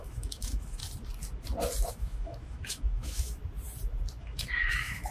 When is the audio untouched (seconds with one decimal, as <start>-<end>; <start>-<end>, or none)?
0.8-1.9; 3.4-4.2